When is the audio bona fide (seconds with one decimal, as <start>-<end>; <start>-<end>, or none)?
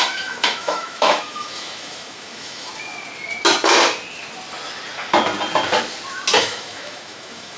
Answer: 2.7-6.4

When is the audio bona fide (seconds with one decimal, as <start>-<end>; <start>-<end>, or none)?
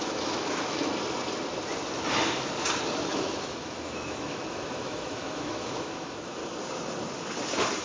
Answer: 0.9-3.0; 6.4-7.8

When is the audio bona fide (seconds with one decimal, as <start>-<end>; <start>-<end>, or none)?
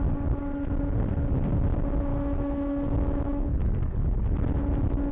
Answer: 0.0-2.1; 3.6-5.1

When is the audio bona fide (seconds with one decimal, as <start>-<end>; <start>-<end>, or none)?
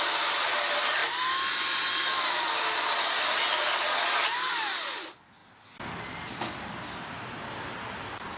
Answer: 0.0-8.4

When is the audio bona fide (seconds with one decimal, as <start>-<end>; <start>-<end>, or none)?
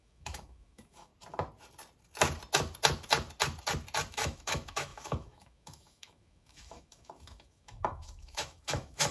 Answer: 1.1-4.1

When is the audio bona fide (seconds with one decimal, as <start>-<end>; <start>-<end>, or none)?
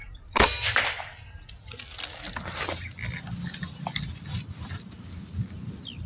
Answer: 0.0-6.1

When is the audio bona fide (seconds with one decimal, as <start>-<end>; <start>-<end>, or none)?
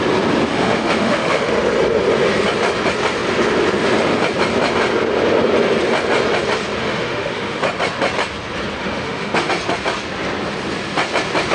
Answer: 0.0-0.5; 1.5-6.8; 7.6-8.8; 9.5-11.5